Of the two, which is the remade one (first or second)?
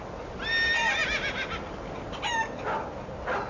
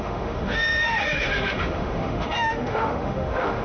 second